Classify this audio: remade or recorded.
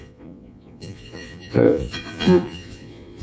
remade